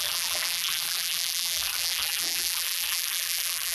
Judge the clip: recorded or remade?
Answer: remade